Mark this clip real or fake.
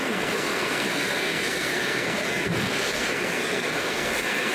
fake